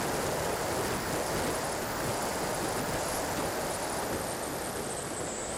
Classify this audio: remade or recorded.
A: recorded